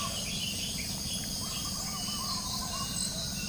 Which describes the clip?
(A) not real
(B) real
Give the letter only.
B